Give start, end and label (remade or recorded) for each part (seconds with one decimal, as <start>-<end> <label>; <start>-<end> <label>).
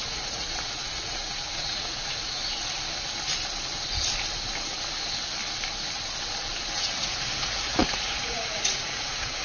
0.0-2.4 remade; 2.4-6.7 recorded; 6.7-9.4 remade